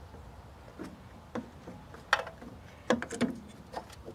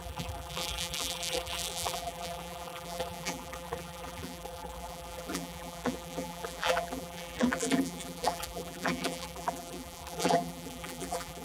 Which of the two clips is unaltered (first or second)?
first